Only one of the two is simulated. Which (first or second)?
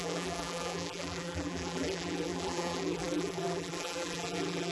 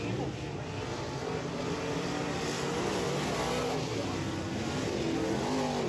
first